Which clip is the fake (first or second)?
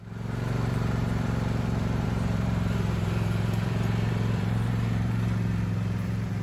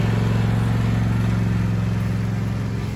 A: first